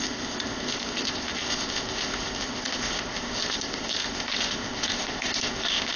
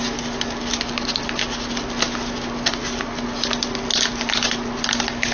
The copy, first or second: first